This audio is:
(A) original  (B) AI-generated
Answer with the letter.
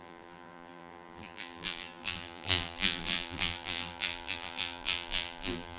B